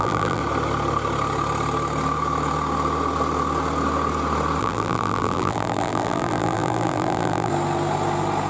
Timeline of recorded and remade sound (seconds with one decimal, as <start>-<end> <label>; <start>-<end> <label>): 0.0-0.4 remade; 0.4-4.6 recorded; 4.6-7.5 remade; 7.5-8.5 recorded